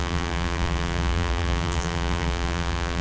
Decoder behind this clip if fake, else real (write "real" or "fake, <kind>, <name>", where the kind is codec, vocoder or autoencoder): fake, vocoder, BigVGAN v2